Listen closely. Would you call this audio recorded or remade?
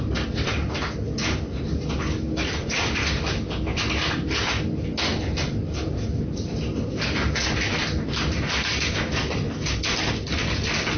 recorded